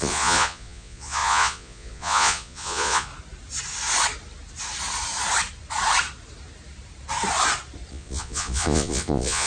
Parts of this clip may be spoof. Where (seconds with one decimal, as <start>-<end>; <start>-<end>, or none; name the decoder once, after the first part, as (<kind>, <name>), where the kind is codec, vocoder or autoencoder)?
0.0-3.1 (vocoder, Vocos); 7.9-9.5